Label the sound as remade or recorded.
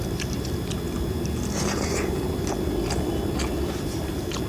recorded